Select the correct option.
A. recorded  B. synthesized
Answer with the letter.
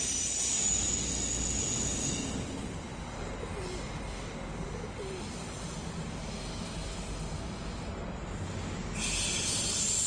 A